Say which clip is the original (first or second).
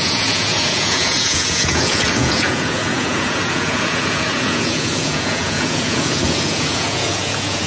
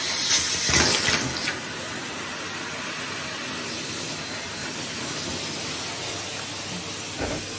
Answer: second